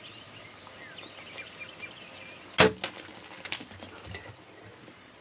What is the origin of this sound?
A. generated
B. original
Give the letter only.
B